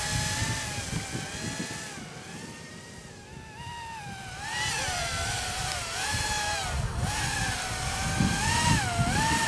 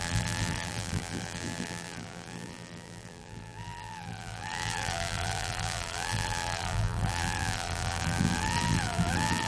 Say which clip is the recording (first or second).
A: first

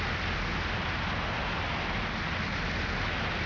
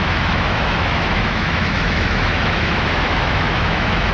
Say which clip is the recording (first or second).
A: first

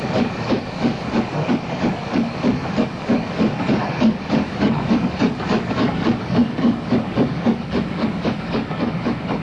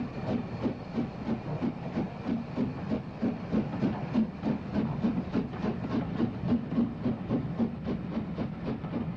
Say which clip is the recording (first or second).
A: second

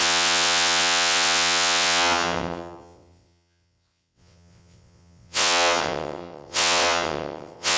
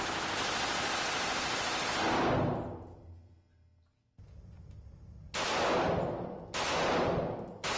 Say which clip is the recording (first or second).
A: second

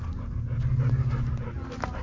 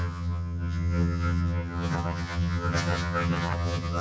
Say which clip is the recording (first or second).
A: first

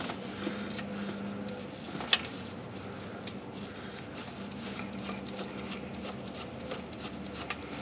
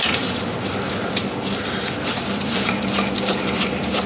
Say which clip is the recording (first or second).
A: first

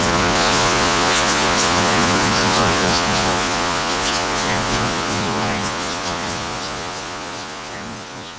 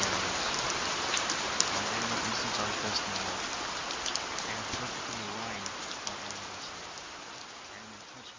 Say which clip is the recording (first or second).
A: second